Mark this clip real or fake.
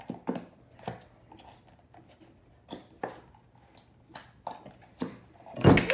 real